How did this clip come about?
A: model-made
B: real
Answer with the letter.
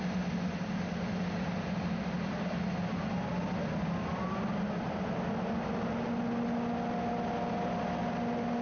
B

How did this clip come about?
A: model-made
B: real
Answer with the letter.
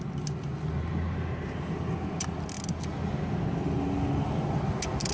B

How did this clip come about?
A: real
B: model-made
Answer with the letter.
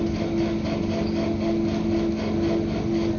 A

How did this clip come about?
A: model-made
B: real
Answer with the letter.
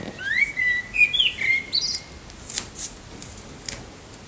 B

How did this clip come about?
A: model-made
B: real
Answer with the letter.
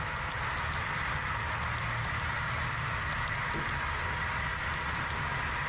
B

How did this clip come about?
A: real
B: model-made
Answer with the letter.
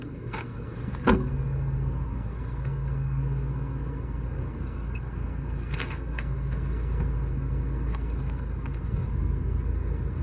B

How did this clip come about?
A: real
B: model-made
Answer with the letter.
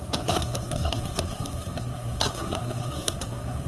B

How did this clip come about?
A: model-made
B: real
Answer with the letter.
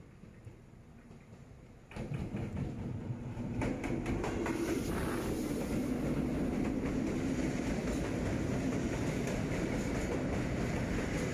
B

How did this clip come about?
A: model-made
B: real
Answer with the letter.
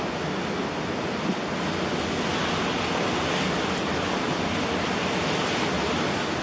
B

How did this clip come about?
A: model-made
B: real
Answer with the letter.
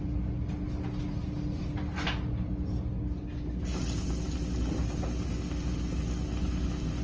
B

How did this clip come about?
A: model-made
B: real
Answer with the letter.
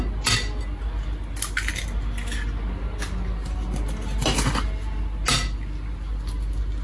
B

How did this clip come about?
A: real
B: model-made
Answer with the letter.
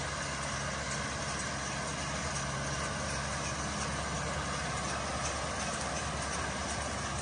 A